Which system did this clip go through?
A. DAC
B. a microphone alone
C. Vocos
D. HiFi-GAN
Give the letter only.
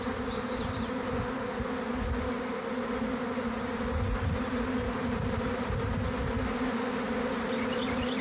B